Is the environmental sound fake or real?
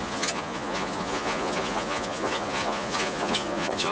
fake